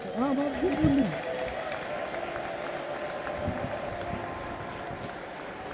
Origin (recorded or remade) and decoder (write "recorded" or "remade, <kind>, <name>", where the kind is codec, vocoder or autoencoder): recorded